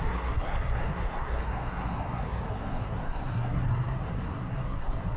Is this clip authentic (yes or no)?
no